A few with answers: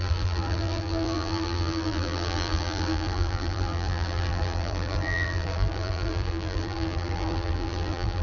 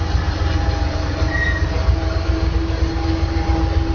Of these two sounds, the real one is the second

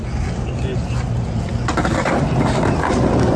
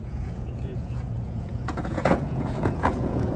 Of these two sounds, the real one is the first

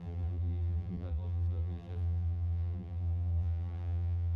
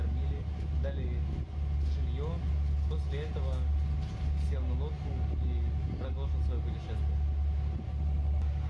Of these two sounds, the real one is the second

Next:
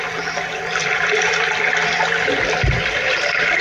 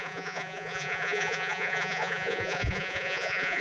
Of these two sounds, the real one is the first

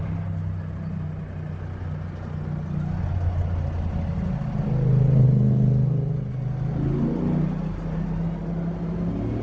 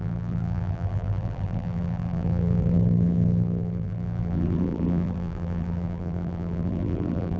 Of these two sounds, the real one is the first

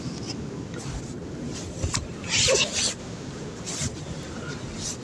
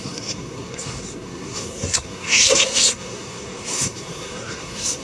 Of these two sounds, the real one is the first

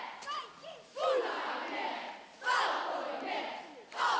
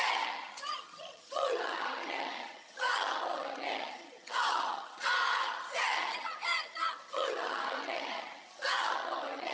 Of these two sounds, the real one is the first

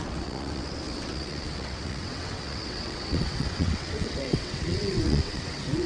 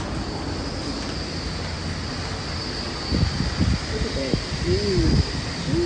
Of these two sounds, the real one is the second